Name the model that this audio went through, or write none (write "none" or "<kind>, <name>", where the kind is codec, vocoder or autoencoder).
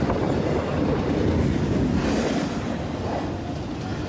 none